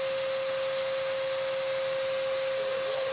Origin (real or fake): real